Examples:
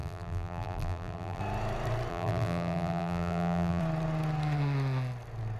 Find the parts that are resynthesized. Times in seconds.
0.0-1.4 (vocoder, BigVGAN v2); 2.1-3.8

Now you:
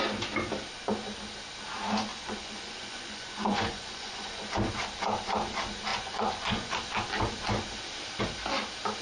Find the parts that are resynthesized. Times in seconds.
2.1-4.5 (vocoder, Vocos); 5.9-6.8

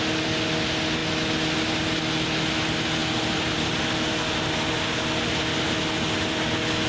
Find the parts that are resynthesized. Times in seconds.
none

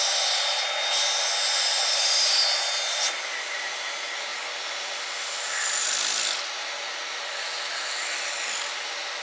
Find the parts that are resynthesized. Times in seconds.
4.3-6.2 (vocoder, BigVGAN v2)

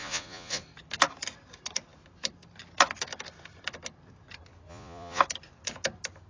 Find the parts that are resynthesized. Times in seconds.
0.0-0.6 (vocoder, Vocos); 4.7-5.2